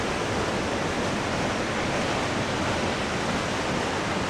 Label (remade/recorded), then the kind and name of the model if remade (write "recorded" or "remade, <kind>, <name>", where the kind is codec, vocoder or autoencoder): recorded